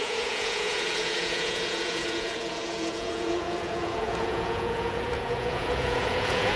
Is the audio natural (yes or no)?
no